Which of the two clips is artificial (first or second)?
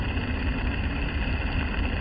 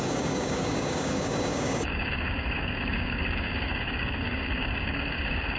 second